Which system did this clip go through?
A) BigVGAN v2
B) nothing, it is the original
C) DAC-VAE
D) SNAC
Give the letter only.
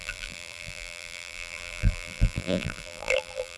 A